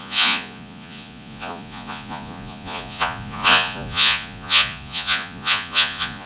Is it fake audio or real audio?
fake